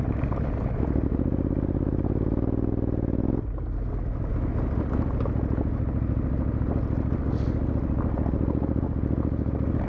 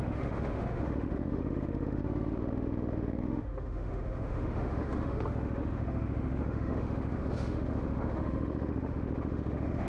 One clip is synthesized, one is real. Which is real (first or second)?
first